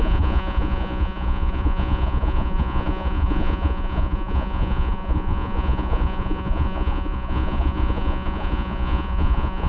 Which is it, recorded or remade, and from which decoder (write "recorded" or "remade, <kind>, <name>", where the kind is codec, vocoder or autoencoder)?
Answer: remade, vocoder, Vocos